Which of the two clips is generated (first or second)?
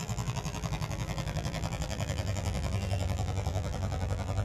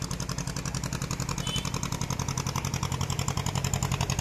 first